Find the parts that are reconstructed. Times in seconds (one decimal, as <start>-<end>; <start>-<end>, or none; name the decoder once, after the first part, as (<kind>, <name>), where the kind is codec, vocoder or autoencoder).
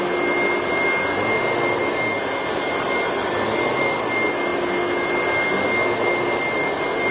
none